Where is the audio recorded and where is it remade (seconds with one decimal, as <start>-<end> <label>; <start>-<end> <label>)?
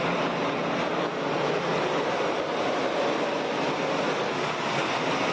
0.0-5.3 recorded